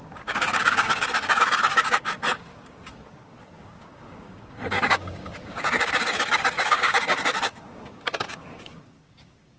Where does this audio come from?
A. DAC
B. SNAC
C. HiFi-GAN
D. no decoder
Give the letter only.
A